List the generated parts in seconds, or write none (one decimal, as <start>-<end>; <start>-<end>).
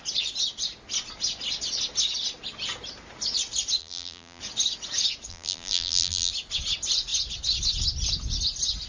3.8-4.4; 5.3-6.3